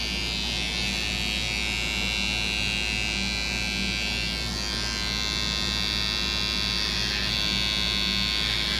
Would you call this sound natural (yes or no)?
yes